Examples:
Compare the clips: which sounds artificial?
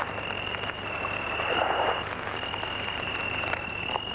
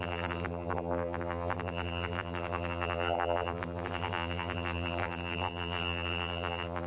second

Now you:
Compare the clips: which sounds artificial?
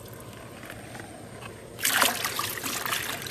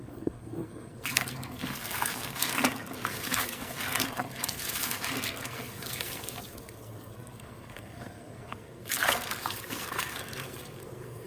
second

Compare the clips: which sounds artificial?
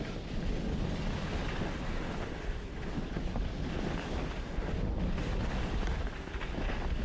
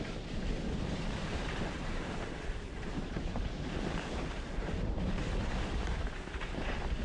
second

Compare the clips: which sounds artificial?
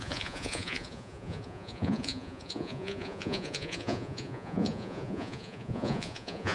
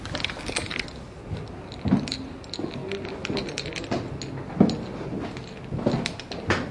first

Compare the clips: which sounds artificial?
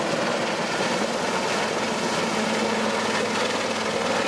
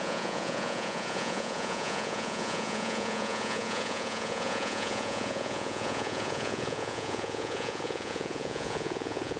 second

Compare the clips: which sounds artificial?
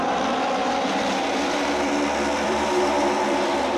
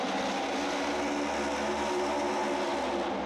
first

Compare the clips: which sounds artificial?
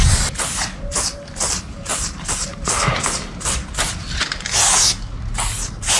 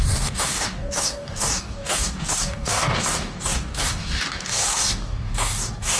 second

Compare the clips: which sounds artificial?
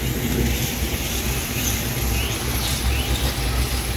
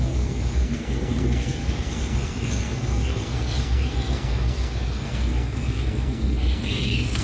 second